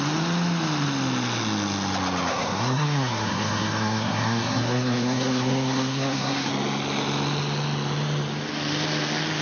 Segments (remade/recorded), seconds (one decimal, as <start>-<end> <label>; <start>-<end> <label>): 0.0-2.3 recorded; 2.3-6.5 remade; 6.5-9.4 recorded